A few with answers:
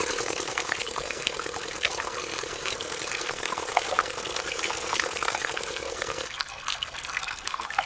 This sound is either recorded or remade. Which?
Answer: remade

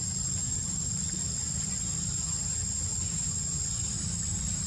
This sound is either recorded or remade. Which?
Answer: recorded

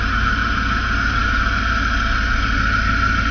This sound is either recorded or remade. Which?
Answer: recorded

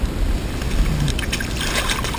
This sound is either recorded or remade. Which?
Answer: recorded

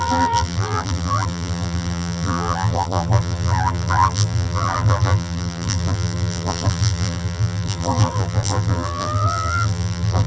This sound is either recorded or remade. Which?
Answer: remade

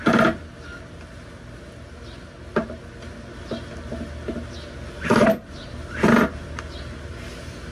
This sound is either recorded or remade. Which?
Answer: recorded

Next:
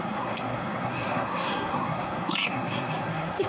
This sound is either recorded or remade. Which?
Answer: remade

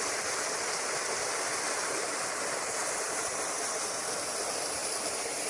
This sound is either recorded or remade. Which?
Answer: recorded